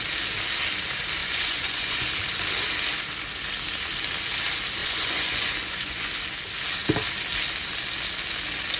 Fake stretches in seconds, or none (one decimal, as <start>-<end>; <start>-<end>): 1.2-2.1; 4.8-6.1